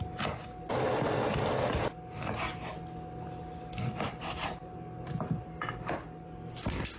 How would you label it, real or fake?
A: real